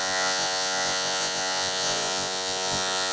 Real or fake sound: fake